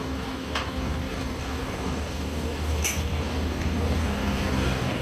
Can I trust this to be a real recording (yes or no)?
no